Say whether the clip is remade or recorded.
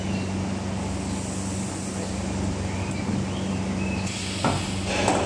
recorded